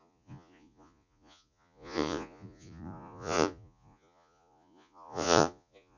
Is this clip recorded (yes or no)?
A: no